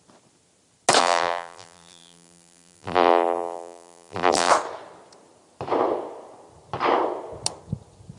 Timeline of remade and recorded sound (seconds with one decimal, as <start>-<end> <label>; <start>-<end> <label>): 0.0-1.0 recorded; 1.0-4.5 remade; 4.5-8.2 recorded